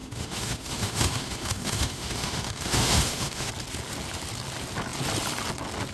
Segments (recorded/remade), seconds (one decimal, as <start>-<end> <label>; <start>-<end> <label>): 0.0-3.5 remade; 3.5-5.9 recorded

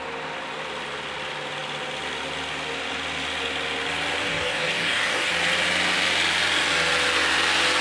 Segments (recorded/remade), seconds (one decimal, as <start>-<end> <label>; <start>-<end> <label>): 0.0-4.2 recorded; 4.2-5.3 remade; 5.3-7.8 recorded

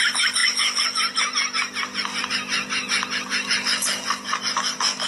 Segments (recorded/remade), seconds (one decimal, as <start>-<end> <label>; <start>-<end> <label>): 0.0-5.1 recorded

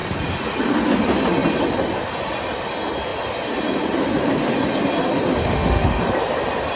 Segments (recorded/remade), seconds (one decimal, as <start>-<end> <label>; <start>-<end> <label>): 0.0-5.4 recorded; 5.4-6.0 remade; 6.0-6.8 recorded

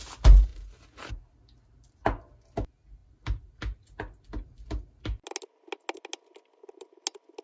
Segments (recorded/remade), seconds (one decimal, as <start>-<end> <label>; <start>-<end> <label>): 0.0-7.4 recorded

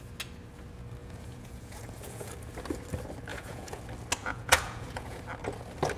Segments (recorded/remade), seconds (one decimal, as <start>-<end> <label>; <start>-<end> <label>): 0.0-1.0 recorded; 1.0-2.3 remade; 2.3-3.3 recorded; 3.3-3.8 remade; 3.8-4.2 recorded; 4.2-5.2 remade; 5.2-6.0 recorded